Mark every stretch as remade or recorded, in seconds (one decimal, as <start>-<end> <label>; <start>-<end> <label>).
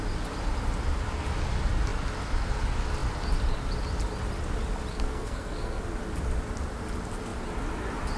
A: 0.0-4.9 recorded; 4.9-5.8 remade; 5.8-8.2 recorded